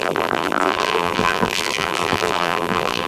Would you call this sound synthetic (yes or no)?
yes